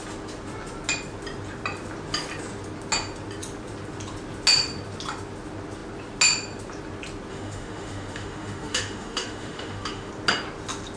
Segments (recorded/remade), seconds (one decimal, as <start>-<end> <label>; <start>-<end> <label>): 0.0-7.3 recorded; 7.3-10.1 remade; 10.1-11.0 recorded